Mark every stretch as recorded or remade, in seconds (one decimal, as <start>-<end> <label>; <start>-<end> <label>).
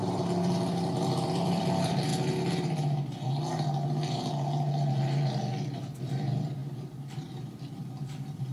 0.0-2.1 remade; 2.1-6.0 recorded; 6.0-8.5 remade